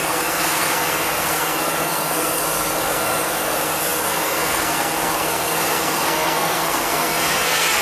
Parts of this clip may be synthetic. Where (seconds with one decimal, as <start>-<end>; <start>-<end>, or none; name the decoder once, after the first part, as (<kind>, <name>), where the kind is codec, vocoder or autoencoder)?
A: 0.0-7.8 (codec, SNAC)